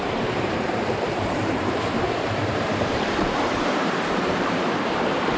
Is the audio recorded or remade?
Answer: remade